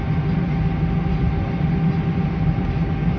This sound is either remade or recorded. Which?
recorded